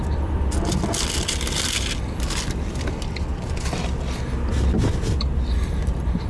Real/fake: real